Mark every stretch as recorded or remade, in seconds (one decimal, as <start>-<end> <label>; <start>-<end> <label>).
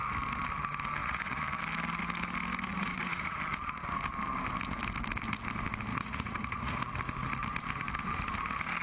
0.0-1.0 recorded; 1.0-1.6 remade; 1.6-2.7 recorded; 2.7-3.4 remade; 3.4-5.9 recorded; 5.9-6.8 remade; 6.8-8.8 recorded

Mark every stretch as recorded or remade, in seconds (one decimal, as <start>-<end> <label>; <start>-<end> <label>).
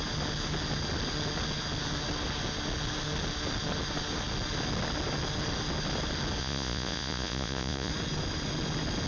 0.0-6.4 recorded; 6.4-7.9 remade; 7.9-9.1 recorded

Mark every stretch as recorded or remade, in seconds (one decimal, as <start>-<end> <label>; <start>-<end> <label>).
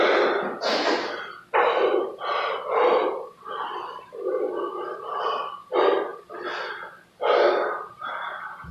0.0-8.7 recorded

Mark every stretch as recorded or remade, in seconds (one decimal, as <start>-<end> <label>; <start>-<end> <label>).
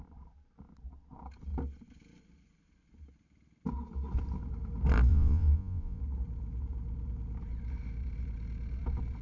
0.0-5.1 recorded; 5.1-6.0 remade; 6.0-9.2 recorded